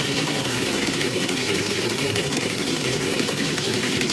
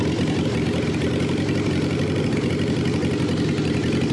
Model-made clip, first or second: first